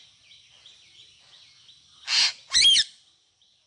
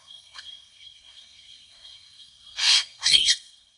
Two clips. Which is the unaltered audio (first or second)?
first